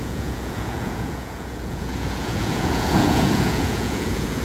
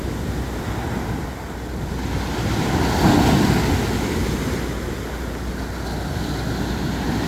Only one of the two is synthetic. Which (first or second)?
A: first